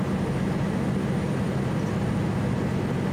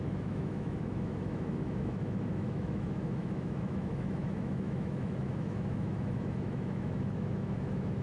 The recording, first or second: first